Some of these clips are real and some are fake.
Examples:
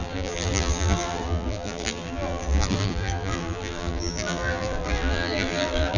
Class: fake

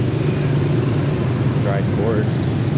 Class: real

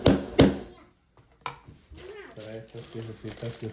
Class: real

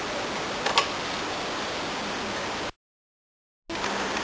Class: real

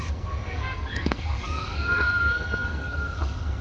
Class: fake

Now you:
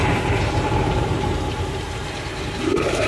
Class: fake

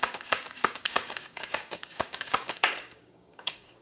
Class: fake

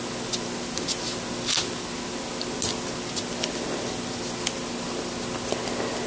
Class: real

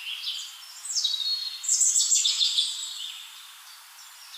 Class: real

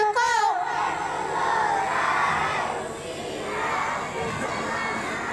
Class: real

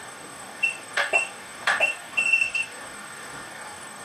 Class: fake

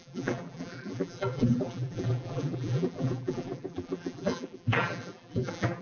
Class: fake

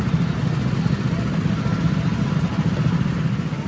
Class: real